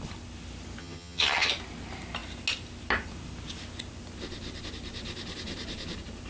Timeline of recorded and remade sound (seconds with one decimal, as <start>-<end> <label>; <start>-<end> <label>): 0.0-0.8 recorded; 0.8-1.5 remade; 1.5-6.3 recorded